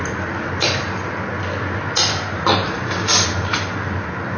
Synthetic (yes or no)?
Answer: no